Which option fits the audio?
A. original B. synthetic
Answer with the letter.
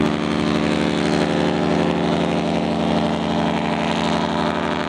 A